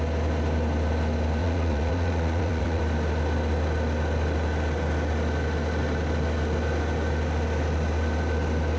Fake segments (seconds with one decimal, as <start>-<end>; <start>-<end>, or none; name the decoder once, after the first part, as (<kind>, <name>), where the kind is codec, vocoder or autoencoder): 1.4-2.8 (vocoder, Vocos)